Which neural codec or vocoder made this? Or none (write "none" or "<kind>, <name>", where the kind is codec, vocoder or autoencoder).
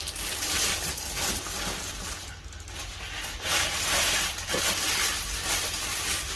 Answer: none